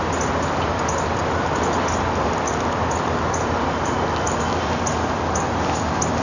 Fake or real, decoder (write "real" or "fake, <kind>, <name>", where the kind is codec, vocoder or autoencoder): real